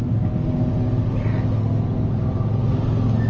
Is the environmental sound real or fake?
real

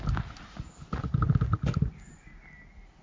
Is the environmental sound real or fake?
real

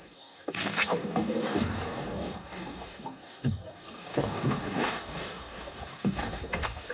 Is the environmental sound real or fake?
fake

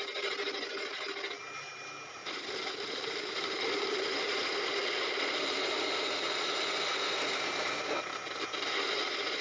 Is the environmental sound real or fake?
real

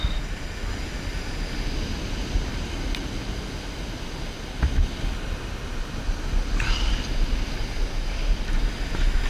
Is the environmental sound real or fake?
real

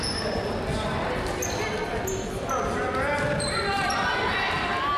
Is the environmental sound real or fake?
real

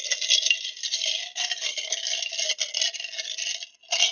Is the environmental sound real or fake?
real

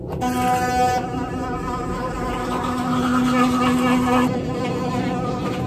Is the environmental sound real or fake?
real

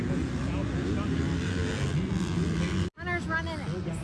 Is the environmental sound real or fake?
real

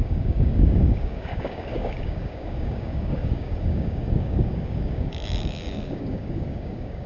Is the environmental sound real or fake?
fake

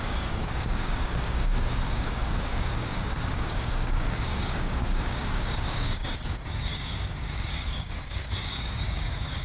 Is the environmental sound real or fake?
fake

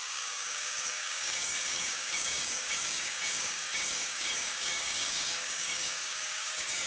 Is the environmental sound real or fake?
fake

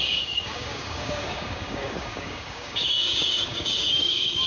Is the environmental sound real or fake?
fake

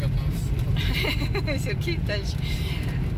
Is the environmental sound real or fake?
real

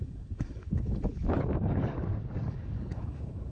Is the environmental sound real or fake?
fake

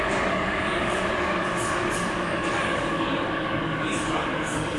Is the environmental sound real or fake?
fake